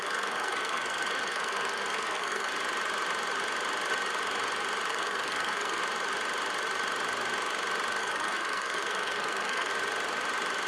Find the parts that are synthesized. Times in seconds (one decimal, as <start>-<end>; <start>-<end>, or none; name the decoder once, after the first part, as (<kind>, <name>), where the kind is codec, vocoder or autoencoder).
0.0-2.5 (codec, SNAC); 4.9-5.8; 8.0-9.7